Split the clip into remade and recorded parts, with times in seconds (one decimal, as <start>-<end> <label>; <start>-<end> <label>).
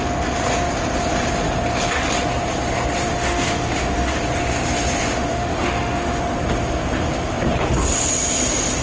0.0-3.0 recorded; 3.0-4.2 remade; 4.2-5.1 recorded; 5.1-6.2 remade; 6.2-8.8 recorded